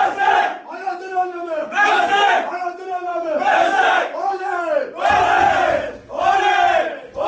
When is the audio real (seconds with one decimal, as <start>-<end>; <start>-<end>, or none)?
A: 0.0-1.1; 2.4-3.1; 4.6-7.3